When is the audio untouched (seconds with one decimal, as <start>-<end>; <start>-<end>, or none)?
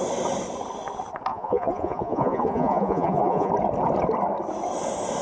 0.0-1.3; 3.5-5.2